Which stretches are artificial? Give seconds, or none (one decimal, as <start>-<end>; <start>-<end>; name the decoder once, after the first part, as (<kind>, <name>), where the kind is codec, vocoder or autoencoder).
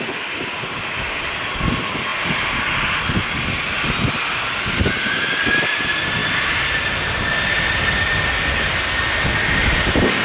none